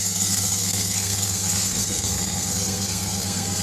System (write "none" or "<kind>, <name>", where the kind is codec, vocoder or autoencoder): codec, SNAC